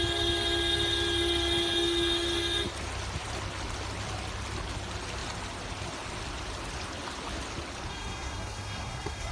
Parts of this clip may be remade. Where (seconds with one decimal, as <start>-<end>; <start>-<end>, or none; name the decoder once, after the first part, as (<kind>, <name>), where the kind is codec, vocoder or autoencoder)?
7.9-9.3 (codec, SNAC)